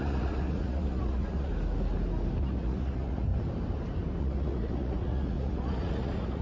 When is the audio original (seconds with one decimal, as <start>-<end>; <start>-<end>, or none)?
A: 1.5-2.4; 3.3-4.2